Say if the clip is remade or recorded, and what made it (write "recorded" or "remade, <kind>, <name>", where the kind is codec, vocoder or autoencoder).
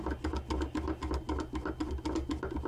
recorded